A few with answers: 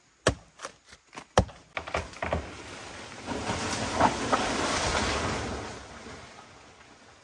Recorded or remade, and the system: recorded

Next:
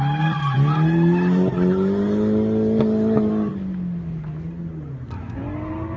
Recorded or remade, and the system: recorded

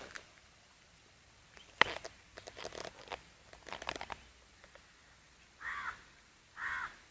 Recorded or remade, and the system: recorded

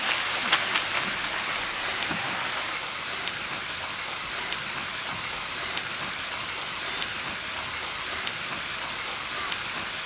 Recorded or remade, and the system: recorded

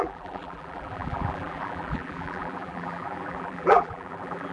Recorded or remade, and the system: remade, vocoder, BigVGAN v2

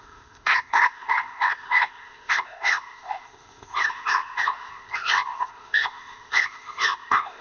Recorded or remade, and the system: remade, codec, ZipCodec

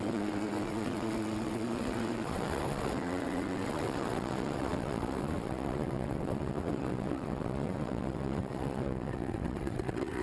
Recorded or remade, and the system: remade, vocoder, WaveNeXt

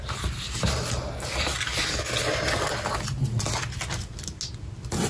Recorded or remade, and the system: recorded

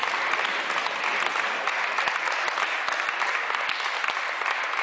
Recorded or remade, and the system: recorded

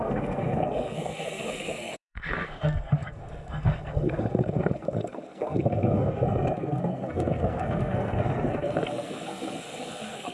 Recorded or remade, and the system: remade, codec, SNAC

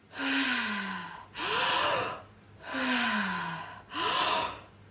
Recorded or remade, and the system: recorded